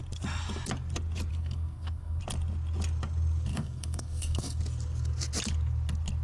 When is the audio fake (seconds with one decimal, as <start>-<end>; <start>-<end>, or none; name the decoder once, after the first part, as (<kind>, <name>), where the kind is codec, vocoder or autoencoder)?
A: 1.3-2.2 (codec, SNAC); 3.5-4.6